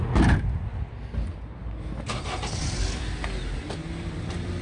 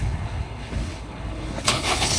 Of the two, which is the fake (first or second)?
second